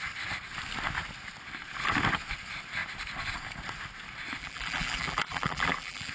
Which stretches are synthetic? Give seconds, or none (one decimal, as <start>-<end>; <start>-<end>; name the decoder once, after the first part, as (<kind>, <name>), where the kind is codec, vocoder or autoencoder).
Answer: 4.4-6.1 (vocoder, BigVGAN v2)